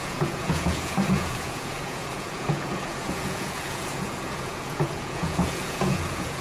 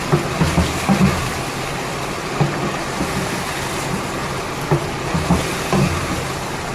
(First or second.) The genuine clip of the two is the second